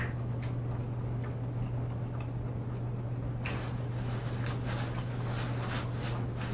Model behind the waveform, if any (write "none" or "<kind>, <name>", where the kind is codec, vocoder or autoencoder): none